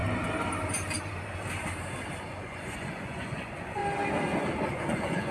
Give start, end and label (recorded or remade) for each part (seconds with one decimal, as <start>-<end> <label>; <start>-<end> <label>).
0.0-2.3 recorded; 2.3-3.8 remade; 3.8-4.7 recorded; 4.7-5.3 remade